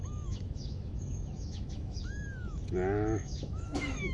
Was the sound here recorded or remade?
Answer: remade